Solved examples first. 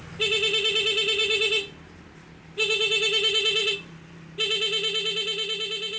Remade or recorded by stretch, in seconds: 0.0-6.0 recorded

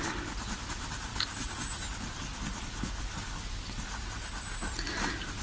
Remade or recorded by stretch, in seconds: 0.0-5.4 recorded

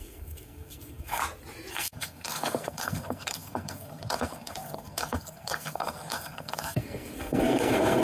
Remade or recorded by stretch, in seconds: 0.0-1.2 remade; 1.2-1.7 recorded; 1.7-8.0 remade

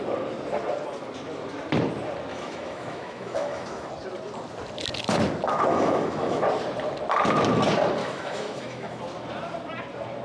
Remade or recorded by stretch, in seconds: 0.0-2.3 recorded; 2.3-3.9 remade; 3.9-5.7 recorded; 5.7-6.4 remade; 6.4-8.0 recorded; 8.0-9.0 remade; 9.0-10.2 recorded